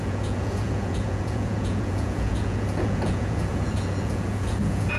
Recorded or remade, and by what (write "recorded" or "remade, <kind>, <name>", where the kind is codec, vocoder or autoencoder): remade, vocoder, Vocos